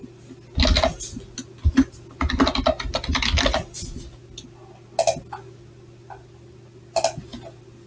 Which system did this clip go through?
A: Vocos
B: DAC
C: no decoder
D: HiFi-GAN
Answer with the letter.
C